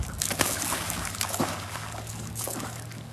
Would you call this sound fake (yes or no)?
yes